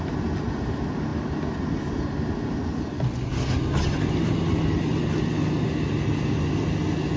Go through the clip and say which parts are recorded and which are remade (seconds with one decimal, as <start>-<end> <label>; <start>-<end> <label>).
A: 0.0-7.2 recorded